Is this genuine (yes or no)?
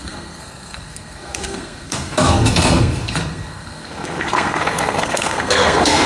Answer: no